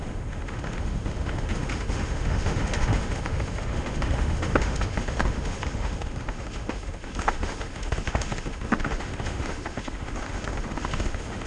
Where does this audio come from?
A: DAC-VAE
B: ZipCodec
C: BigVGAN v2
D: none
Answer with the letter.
A